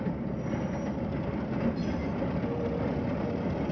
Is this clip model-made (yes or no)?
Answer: no